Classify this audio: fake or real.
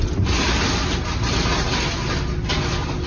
real